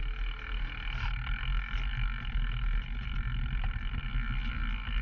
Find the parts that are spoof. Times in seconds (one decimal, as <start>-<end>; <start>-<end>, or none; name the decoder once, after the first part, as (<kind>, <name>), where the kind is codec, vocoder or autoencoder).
none